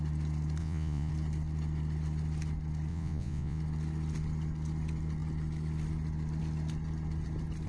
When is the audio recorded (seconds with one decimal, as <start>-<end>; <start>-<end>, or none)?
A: 0.0-0.6; 1.1-2.9; 3.6-7.7